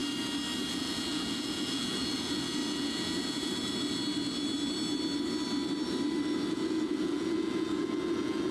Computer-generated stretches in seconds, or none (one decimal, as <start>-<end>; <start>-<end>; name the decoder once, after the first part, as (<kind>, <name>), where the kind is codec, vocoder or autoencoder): 0.7-4.0 (vocoder, Vocos); 6.5-8.5